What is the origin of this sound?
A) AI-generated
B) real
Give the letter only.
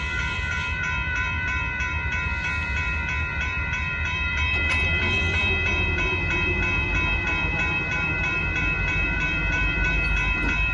A